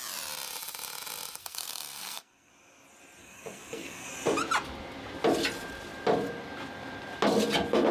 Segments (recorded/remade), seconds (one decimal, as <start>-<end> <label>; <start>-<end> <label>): 0.0-1.4 recorded; 1.4-2.5 remade; 2.5-3.2 recorded; 3.2-4.1 remade; 4.1-7.9 recorded